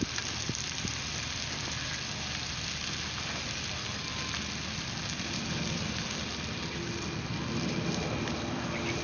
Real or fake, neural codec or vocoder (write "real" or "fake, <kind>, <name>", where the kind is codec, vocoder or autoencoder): real